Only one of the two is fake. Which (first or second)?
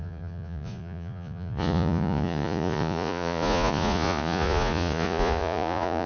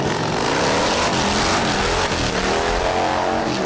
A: first